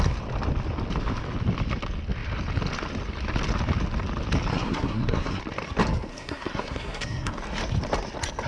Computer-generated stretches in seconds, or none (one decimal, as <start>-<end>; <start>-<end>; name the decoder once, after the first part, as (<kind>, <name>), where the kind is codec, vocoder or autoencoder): 4.5-5.4 (codec, SNAC); 6.1-7.4